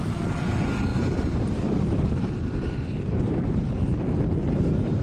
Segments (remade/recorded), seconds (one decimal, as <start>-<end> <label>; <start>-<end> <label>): 0.0-0.9 recorded; 0.9-3.3 remade; 3.3-4.4 recorded; 4.4-5.0 remade